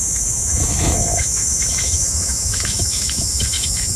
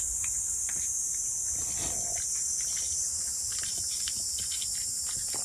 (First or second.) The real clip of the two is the second